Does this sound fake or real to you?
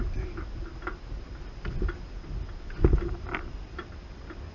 real